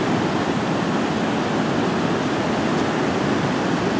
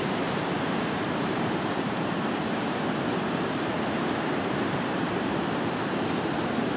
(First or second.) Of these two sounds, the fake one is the second